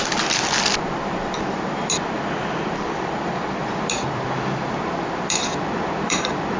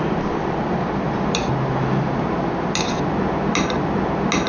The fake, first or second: first